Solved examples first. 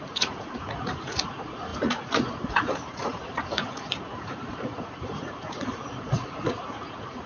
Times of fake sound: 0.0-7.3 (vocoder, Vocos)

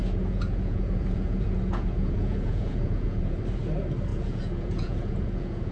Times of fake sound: 0.0-3.4 (vocoder, Vocos); 4.1-5.7

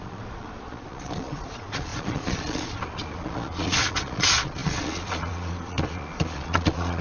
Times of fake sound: 0.0-7.0 (vocoder, Vocos)

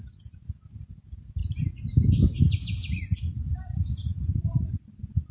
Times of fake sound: 1.4-4.6 (vocoder, BigVGAN v2)

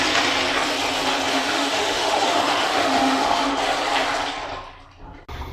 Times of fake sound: 1.3-3.6 (autoencoder, DAC-VAE)

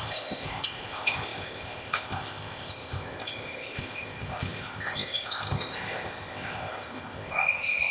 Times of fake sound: 0.0-7.9 (codec, ZipCodec)